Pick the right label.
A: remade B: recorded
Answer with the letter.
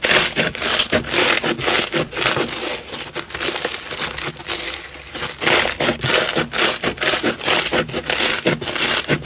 B